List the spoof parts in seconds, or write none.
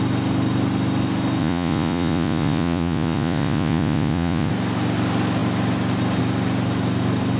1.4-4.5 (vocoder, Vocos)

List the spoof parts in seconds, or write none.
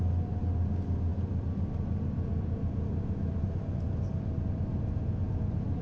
none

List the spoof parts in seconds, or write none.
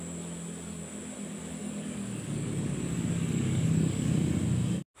1.6-4.1 (codec, DAC)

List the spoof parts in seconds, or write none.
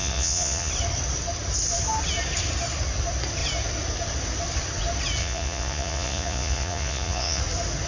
0.0-0.7 (vocoder, Vocos); 5.2-7.4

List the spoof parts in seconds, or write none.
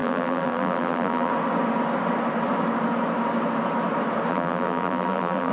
0.0-1.3 (vocoder, BigVGAN v2); 4.3-5.5